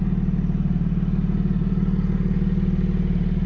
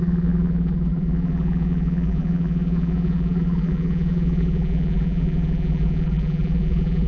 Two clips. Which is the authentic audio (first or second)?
first